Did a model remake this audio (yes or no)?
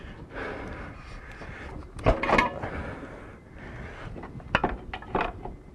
no